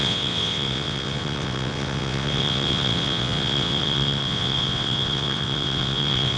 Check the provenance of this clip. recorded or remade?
remade